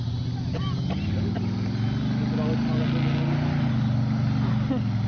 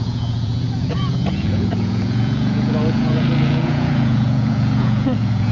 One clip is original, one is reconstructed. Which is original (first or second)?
first